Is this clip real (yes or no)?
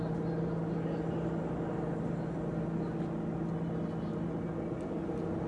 yes